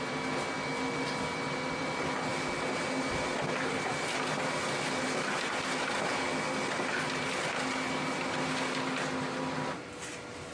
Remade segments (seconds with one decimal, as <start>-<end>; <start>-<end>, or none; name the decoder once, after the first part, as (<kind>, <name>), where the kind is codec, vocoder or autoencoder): none